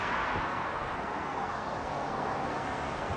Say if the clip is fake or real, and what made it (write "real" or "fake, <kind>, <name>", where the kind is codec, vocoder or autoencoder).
fake, codec, SNAC